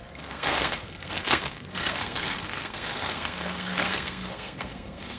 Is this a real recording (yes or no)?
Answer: no